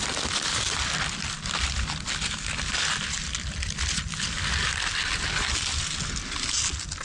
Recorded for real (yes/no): yes